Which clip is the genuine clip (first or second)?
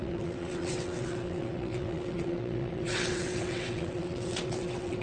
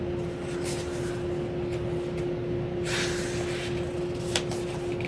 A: second